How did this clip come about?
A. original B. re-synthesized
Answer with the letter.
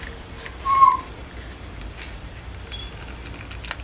A